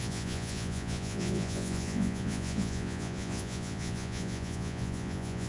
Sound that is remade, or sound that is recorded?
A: remade